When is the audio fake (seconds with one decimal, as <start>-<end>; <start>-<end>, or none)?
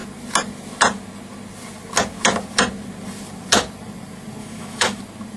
4.4-5.0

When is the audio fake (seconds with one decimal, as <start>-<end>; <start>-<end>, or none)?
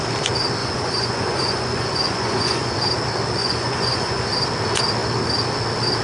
0.6-2.7; 3.4-4.3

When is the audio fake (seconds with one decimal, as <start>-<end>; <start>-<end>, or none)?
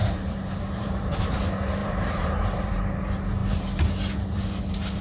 0.0-1.3; 1.8-2.8; 3.4-4.6